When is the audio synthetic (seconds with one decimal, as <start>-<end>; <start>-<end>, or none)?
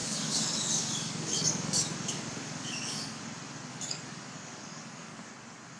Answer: 0.0-3.2; 3.7-5.3